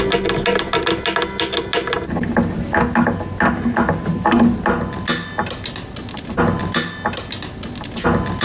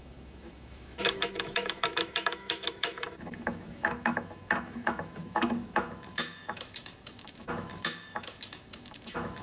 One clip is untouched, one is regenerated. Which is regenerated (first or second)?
second